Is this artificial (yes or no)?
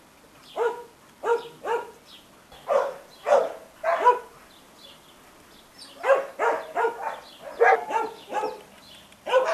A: no